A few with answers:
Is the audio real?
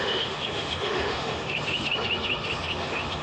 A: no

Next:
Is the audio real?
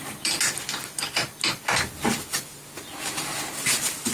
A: yes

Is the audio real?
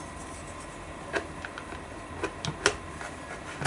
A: no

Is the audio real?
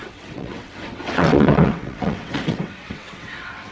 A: no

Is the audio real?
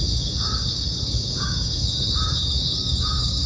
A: no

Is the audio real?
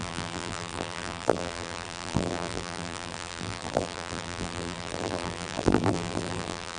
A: no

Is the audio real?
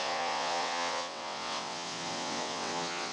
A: no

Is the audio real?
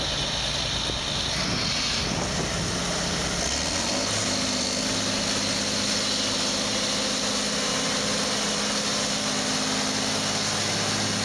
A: yes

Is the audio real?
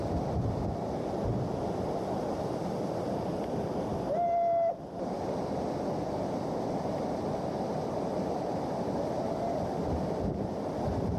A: yes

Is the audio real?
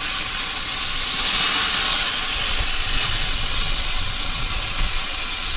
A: no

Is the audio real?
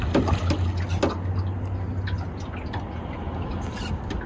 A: yes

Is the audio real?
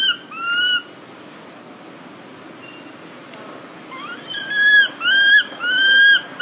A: yes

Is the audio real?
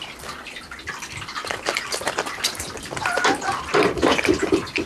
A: yes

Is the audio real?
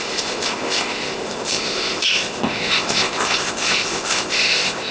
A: no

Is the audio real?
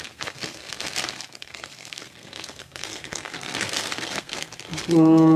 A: no